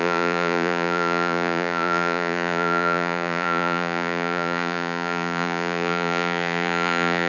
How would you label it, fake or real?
fake